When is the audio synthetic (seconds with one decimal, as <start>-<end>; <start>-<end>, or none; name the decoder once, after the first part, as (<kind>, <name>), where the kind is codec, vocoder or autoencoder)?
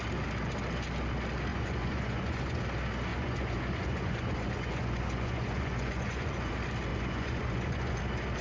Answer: 1.5-2.6 (vocoder, Vocos); 3.1-6.5; 6.9-8.0